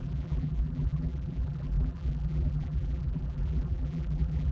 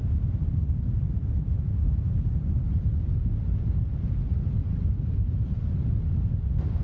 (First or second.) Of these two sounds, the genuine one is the second